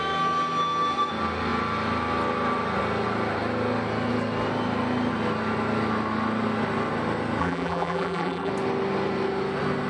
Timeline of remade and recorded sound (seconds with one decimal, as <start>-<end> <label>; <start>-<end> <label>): 0.0-7.4 recorded; 7.4-8.5 remade; 8.5-9.9 recorded